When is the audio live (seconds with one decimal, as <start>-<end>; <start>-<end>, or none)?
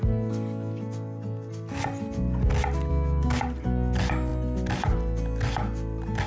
0.0-2.9; 3.4-6.3